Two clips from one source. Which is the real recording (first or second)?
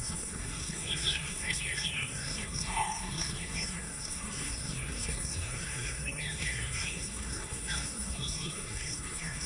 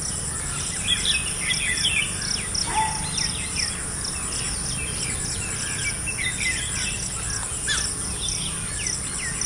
second